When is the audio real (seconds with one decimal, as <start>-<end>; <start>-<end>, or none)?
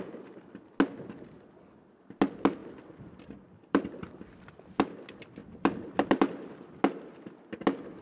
0.0-2.6; 4.1-5.4; 6.5-8.0